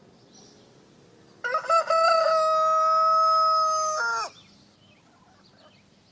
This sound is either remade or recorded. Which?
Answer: recorded